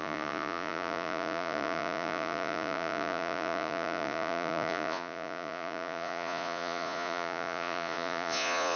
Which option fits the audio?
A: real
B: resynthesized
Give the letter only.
B